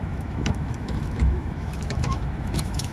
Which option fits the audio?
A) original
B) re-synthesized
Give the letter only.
B